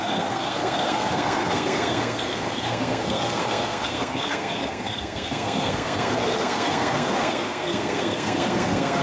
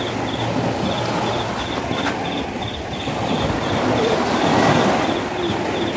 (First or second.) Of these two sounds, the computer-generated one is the first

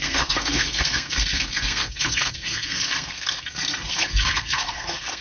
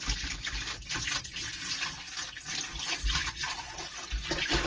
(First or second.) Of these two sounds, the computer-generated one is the first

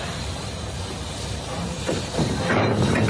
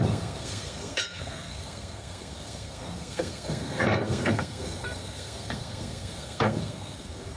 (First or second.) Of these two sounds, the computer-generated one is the second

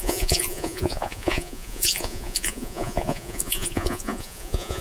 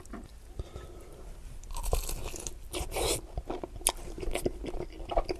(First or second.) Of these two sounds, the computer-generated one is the first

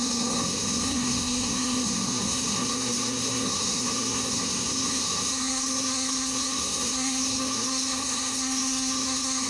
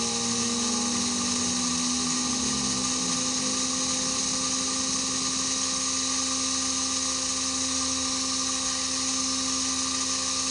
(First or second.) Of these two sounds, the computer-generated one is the first